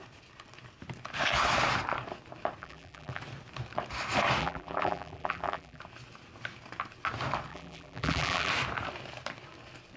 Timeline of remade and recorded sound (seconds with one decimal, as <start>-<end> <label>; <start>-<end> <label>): 0.0-2.6 recorded; 2.6-3.2 remade; 3.2-4.4 recorded; 4.4-5.8 remade; 5.8-7.5 recorded; 7.5-8.5 remade; 8.5-10.0 recorded